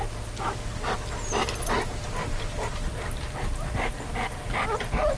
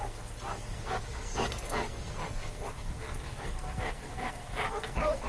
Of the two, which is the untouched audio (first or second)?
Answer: first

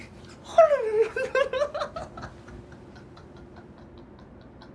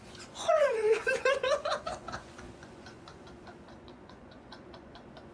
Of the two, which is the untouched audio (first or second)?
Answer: first